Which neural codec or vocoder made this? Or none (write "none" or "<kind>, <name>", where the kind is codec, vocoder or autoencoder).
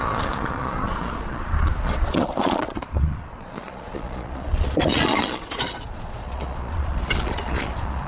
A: vocoder, Vocos